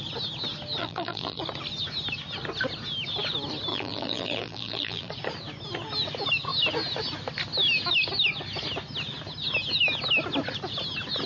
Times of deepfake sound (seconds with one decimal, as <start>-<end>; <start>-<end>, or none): 0.8-1.4; 3.7-5.1